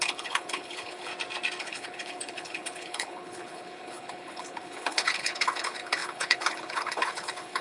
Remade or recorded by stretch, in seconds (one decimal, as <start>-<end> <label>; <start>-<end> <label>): 0.0-1.1 remade; 1.1-1.6 recorded; 1.6-7.6 remade